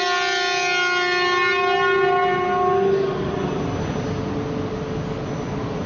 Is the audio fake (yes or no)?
no